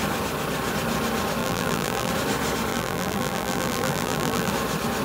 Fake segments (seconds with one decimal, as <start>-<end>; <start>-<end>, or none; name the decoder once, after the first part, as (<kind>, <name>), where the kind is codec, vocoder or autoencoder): 1.4-2.1 (vocoder, BigVGAN v2); 2.7-4.5